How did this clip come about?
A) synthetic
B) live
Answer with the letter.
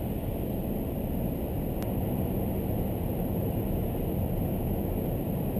B